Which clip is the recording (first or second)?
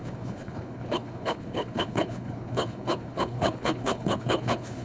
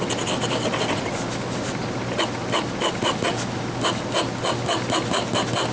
second